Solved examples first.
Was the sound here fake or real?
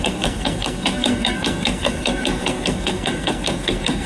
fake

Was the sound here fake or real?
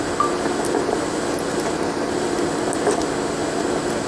real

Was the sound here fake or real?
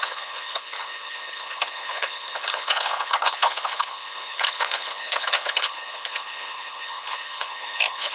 fake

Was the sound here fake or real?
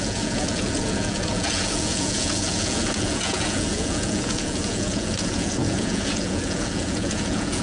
fake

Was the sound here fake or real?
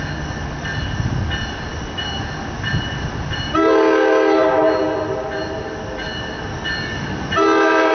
real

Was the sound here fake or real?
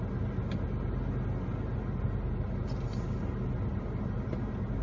real